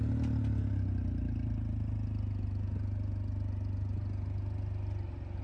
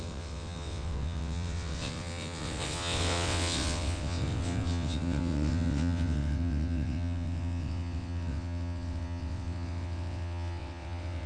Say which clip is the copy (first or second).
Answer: second